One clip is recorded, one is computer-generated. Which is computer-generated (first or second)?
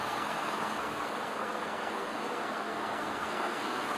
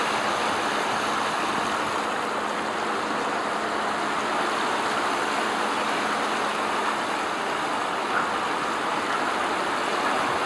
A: first